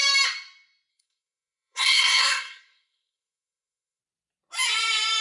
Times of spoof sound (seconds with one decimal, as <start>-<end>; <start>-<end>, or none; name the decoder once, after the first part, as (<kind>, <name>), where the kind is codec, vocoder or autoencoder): 0.9-4.0 (codec, SNAC)